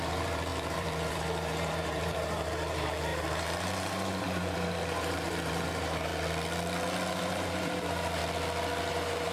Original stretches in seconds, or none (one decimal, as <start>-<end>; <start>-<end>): 6.1-7.1; 8.2-8.9